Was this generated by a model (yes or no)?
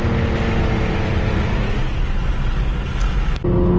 no